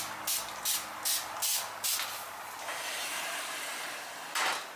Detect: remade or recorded recorded